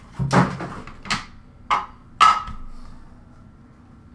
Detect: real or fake real